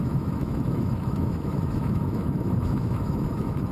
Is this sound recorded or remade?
remade